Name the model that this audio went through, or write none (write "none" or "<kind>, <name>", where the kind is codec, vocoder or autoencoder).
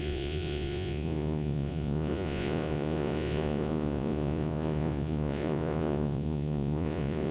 vocoder, Vocos